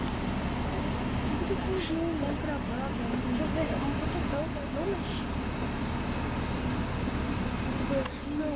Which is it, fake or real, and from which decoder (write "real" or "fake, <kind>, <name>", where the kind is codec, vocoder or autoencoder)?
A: real